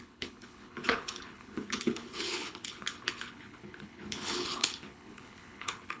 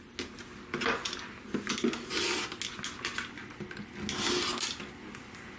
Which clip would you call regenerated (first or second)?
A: first